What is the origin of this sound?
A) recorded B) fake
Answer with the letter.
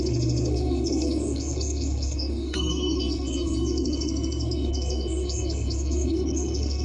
B